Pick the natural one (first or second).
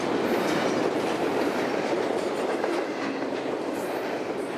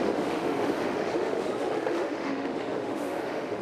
first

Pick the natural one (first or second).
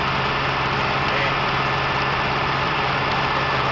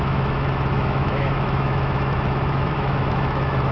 first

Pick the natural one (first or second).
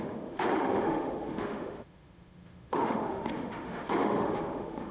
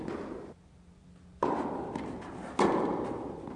second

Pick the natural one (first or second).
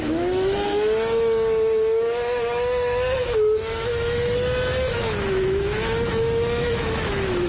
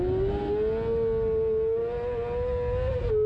second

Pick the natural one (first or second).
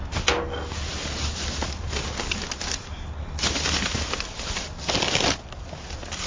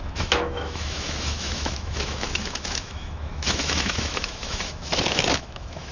first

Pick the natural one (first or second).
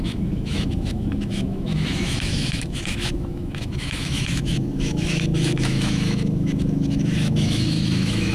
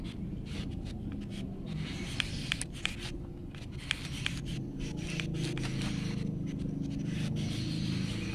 second